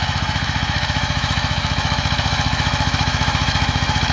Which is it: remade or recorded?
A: remade